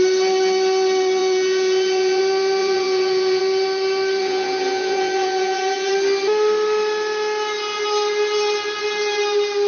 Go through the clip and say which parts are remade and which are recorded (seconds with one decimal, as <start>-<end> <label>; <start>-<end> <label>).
0.0-1.2 recorded; 1.2-2.2 remade; 2.2-2.6 recorded; 2.6-3.4 remade; 3.4-4.2 recorded; 4.2-5.9 remade; 5.9-9.7 recorded